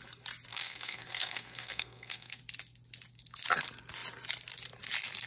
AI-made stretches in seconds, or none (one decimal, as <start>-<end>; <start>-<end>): 0.5-2.4